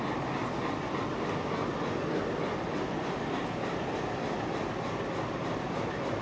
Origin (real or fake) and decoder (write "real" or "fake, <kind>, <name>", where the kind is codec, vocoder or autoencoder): real